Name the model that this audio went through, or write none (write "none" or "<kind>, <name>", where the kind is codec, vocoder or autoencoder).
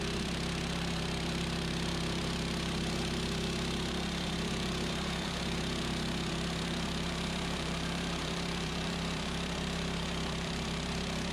vocoder, BigVGAN v2